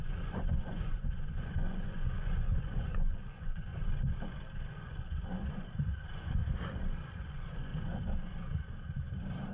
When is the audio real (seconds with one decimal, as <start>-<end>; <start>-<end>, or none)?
3.7-4.7; 6.4-7.1; 7.7-9.5